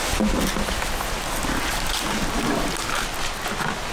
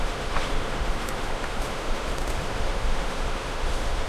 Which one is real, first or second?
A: first